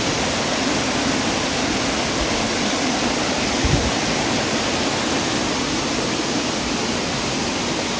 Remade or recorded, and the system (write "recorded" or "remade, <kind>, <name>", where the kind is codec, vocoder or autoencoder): recorded